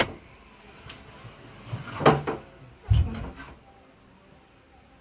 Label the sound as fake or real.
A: real